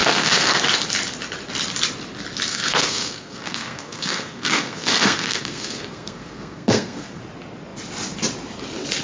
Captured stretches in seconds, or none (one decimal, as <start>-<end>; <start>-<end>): 0.6-2.5; 7.2-9.0